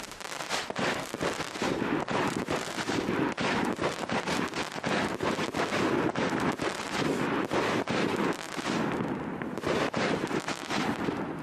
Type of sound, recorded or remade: recorded